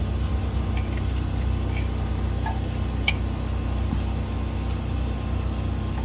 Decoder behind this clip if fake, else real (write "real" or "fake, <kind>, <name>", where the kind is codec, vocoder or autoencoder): real